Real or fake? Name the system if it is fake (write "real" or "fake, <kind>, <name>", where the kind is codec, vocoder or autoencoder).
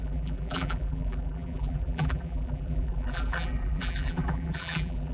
fake, vocoder, BigVGAN v2